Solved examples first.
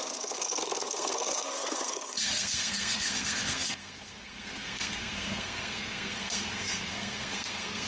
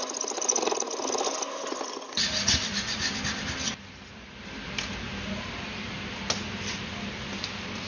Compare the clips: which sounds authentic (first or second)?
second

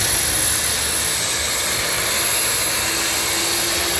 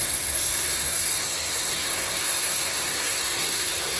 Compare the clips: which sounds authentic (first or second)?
first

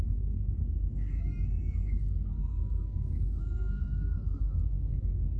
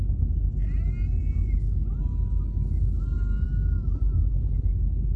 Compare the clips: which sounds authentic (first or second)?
second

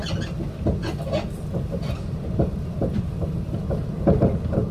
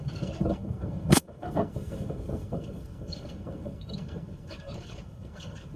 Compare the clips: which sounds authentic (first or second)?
first